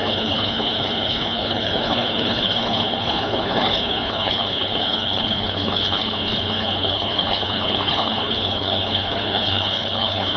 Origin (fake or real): fake